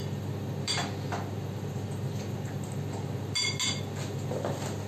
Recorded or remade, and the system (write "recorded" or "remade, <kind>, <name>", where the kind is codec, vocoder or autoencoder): recorded